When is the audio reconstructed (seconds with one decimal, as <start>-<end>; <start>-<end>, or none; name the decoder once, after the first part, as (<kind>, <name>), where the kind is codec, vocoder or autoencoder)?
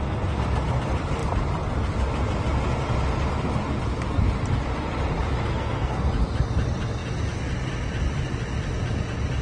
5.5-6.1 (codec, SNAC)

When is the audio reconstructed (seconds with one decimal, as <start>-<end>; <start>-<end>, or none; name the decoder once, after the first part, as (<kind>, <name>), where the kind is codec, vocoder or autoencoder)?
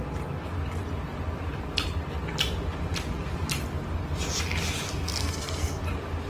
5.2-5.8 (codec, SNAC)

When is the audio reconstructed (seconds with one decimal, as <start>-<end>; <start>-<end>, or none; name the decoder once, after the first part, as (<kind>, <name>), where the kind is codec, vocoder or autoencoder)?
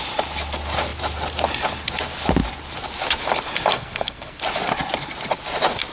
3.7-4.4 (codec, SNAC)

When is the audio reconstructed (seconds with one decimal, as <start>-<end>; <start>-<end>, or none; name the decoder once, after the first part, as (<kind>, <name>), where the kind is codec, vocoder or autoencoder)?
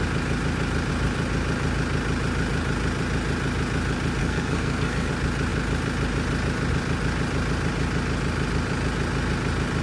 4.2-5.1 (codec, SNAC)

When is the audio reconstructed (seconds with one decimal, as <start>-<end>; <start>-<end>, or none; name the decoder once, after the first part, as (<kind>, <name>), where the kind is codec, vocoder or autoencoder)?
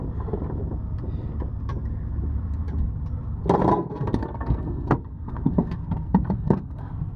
3.7-7.2 (codec, SNAC)